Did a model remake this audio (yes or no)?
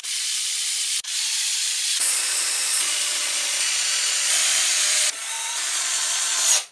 yes